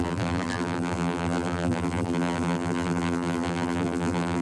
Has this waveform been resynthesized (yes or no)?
yes